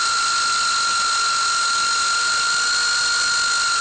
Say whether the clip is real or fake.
real